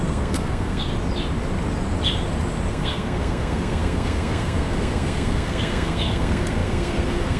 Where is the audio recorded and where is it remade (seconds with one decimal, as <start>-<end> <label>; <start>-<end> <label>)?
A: 0.0-0.9 remade; 0.9-2.7 recorded; 2.7-7.4 remade